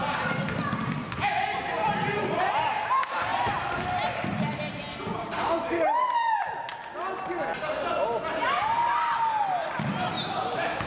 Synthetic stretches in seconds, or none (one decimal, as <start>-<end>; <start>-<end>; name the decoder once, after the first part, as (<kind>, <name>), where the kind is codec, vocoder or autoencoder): none